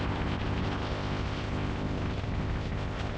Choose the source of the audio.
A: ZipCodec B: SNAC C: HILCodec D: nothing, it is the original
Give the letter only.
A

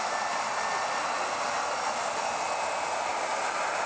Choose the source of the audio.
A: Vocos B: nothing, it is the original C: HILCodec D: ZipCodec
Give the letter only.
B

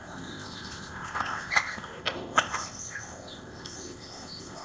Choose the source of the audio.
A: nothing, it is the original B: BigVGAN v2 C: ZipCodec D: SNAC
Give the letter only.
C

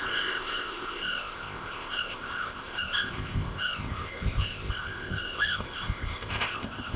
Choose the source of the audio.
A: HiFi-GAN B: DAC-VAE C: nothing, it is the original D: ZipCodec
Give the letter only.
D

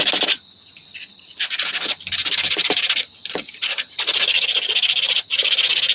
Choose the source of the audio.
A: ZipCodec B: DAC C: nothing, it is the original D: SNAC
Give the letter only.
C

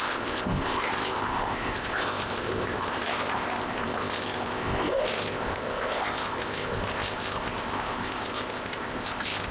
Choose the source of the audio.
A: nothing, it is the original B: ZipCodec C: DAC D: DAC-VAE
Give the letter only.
B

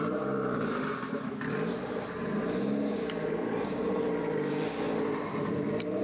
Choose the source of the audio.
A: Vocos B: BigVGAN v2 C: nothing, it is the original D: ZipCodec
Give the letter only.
C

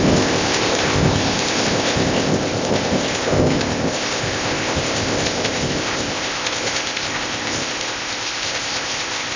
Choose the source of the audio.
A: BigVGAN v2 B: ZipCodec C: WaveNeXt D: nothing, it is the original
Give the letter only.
B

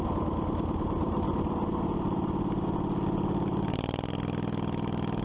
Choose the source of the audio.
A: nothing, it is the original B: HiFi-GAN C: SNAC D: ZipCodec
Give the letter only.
A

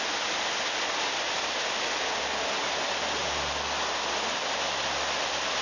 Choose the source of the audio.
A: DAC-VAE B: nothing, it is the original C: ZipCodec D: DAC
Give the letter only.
B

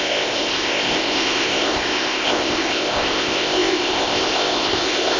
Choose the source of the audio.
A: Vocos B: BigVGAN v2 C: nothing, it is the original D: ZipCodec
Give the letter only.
D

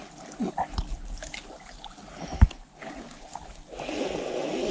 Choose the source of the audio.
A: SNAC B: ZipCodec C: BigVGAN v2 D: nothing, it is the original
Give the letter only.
D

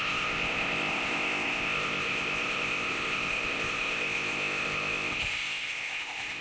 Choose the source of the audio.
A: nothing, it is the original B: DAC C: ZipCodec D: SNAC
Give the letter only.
C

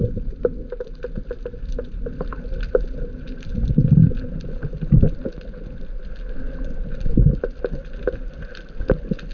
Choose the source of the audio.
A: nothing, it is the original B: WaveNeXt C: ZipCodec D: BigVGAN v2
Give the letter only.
A